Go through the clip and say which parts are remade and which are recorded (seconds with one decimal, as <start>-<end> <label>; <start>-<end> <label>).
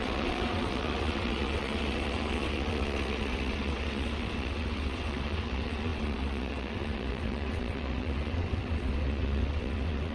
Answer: 0.0-10.1 remade